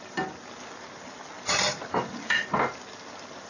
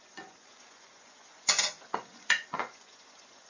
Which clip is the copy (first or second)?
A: second